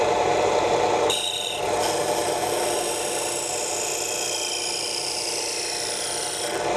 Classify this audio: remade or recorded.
recorded